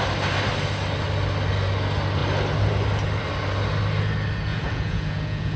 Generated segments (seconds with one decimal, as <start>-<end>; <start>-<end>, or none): 4.5-5.6